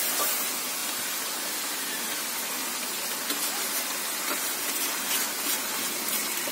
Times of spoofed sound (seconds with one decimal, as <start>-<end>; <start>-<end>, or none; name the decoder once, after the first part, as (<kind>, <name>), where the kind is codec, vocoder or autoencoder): none